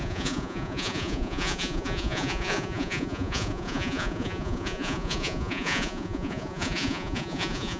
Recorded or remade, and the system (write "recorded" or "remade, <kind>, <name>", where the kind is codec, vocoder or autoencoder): remade, vocoder, Vocos